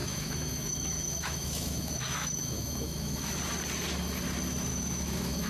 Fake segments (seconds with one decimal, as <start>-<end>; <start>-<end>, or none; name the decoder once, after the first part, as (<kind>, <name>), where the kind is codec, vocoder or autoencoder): 0.0-3.3 (autoencoder, DAC-VAE); 4.7-5.5